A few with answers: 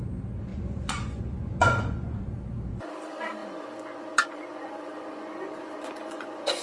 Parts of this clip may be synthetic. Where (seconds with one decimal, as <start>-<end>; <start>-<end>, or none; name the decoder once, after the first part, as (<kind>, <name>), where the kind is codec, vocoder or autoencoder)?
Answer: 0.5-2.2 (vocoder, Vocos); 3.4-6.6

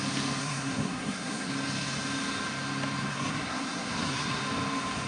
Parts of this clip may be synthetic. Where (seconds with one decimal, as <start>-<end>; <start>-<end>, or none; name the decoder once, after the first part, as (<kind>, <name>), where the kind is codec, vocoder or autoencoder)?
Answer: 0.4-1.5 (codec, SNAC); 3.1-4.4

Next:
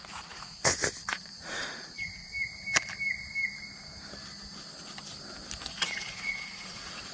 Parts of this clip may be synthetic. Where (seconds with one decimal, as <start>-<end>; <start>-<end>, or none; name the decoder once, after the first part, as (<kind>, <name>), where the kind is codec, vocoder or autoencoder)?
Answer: 0.0-2.2 (vocoder, Vocos); 5.7-7.1